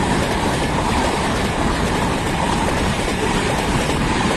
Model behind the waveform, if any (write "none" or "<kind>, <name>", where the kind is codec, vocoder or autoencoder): vocoder, BigVGAN v2